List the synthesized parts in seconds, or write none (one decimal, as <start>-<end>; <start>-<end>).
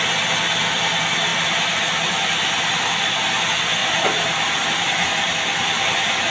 3.8-5.1